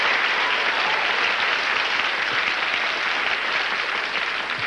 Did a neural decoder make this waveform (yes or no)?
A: no